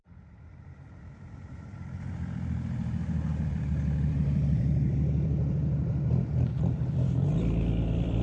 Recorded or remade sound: remade